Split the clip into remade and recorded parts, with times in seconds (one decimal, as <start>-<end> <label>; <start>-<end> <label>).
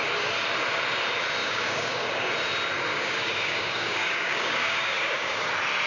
0.0-1.4 recorded; 1.4-2.3 remade; 2.3-2.9 recorded; 2.9-5.5 remade; 5.5-5.9 recorded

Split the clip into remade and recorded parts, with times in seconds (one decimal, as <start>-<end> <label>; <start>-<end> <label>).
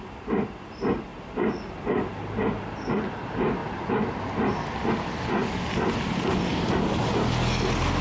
0.0-8.0 recorded